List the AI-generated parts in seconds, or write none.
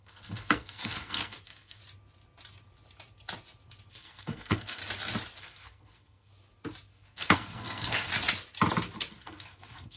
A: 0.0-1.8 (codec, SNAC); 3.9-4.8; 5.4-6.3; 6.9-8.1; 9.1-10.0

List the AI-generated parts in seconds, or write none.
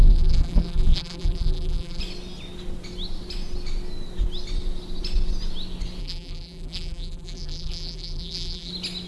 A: 0.0-2.0 (vocoder, BigVGAN v2); 6.0-8.7